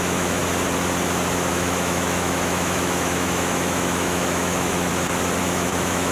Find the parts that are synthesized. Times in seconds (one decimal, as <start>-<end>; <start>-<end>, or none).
0.0-0.4; 1.5-4.9; 5.4-6.1